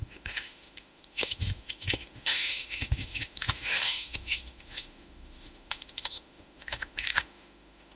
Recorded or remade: remade